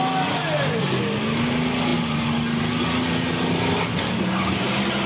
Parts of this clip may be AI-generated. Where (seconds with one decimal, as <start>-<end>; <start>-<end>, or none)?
none